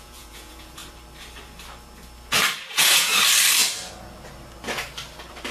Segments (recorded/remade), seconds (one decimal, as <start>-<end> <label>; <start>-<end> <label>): 0.0-0.8 remade; 0.8-2.7 recorded; 2.7-3.1 remade; 3.1-5.5 recorded